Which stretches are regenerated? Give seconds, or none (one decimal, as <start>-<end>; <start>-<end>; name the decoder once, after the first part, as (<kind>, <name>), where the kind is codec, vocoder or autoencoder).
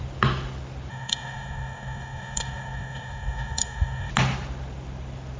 0.9-4.1 (codec, DAC)